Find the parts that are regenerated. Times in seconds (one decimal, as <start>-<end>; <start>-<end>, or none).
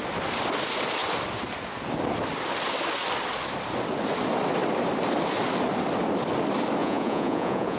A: 6.8-7.8